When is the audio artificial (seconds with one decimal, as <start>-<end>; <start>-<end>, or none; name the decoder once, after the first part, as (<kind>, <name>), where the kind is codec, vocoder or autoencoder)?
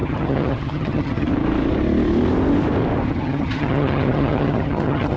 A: 0.0-1.3 (vocoder, HiFi-GAN); 3.1-5.2